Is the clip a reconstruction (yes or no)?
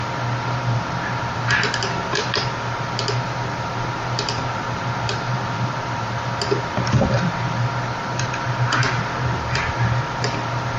yes